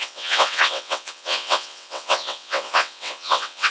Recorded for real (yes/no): no